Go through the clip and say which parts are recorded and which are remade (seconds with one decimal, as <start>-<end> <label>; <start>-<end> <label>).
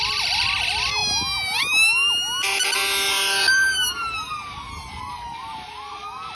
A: 0.0-6.3 recorded